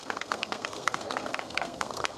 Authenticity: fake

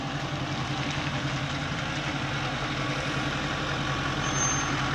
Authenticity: real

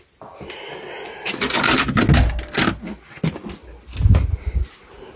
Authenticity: real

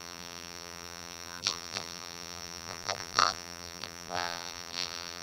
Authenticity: fake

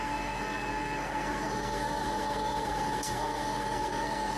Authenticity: fake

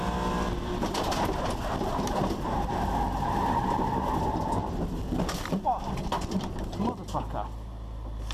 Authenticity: real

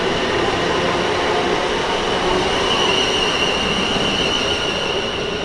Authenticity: real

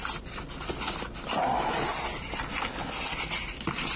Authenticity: real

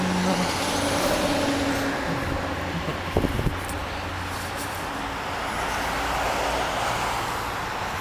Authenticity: real